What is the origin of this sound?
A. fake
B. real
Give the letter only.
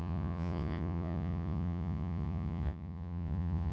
A